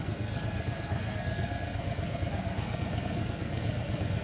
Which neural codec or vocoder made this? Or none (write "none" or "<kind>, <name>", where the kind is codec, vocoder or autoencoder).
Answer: codec, SNAC